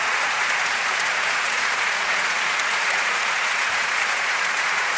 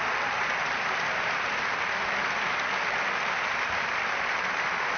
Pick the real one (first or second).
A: second